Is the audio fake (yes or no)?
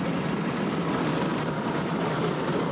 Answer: yes